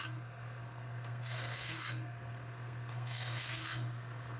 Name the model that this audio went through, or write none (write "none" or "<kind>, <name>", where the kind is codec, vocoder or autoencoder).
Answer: codec, SNAC